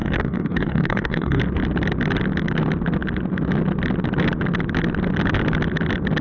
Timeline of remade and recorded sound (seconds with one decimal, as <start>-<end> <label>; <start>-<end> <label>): 0.0-1.4 remade; 1.4-6.2 recorded